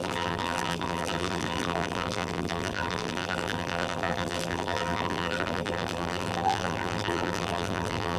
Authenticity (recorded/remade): remade